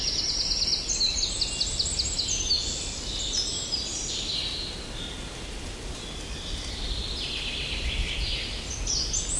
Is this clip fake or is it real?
real